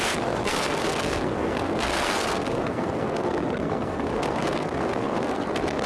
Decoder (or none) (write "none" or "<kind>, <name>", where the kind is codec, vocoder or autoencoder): codec, SNAC